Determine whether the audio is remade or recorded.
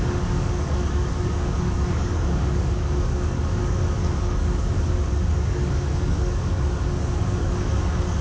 remade